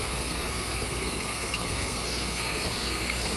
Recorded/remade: remade